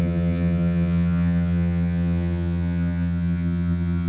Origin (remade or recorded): remade